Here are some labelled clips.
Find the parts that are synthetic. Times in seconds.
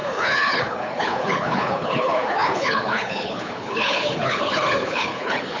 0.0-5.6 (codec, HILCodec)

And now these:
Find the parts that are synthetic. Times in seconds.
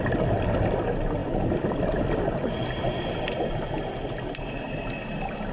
none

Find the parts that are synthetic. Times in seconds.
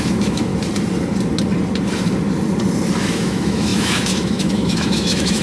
0.0-0.5 (autoencoder, DAC-VAE); 3.0-5.4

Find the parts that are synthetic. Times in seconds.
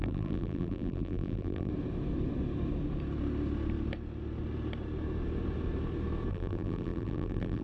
0.0-1.7 (vocoder, BigVGAN v2); 6.3-7.6